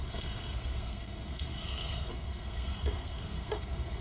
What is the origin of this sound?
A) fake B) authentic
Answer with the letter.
A